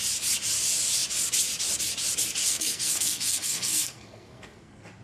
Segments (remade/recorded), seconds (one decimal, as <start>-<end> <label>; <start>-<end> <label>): 0.0-2.4 recorded; 2.4-5.0 remade